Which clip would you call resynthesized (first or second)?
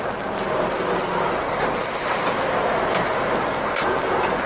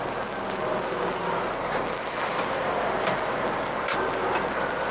first